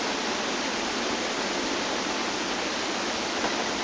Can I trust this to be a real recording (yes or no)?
yes